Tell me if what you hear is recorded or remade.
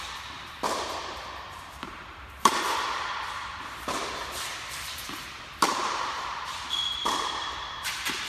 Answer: remade